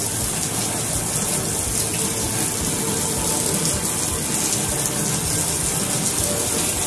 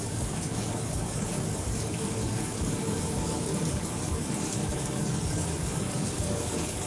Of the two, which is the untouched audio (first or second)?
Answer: first